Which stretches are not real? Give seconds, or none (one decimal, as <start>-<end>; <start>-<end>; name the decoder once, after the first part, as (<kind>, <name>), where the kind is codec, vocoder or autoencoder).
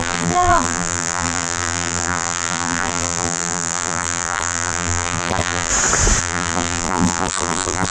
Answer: 0.0-5.7 (vocoder, BigVGAN v2); 6.2-7.9